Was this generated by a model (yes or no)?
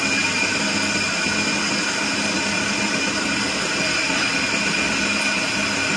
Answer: no